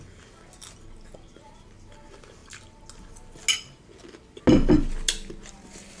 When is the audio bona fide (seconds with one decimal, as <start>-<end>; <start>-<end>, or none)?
0.0-6.0